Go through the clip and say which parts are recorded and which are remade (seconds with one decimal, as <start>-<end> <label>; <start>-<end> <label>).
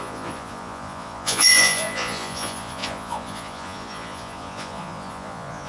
0.0-5.7 remade